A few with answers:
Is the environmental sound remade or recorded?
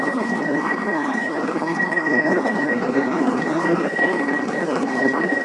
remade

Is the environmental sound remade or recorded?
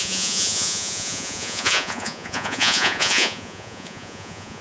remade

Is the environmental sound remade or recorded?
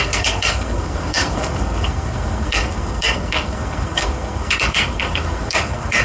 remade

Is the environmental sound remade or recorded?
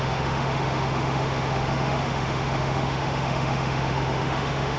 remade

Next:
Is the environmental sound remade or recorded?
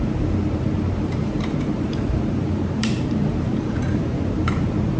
remade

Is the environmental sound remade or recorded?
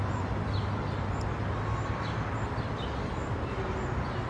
recorded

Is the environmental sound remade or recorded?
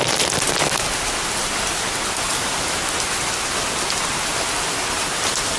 recorded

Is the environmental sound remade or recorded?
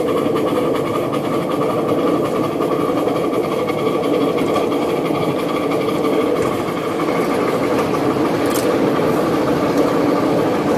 remade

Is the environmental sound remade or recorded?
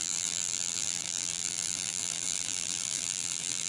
remade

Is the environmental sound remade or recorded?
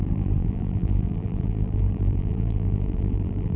remade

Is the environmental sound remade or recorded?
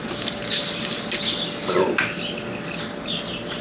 recorded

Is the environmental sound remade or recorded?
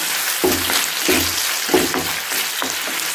recorded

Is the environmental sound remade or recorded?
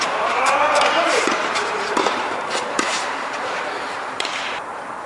remade